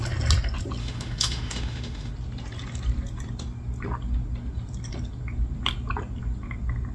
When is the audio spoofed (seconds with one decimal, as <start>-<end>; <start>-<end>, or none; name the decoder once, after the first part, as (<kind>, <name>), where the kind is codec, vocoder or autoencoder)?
0.8-2.1 (autoencoder, DAC-VAE)